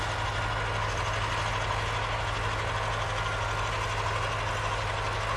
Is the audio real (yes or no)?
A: yes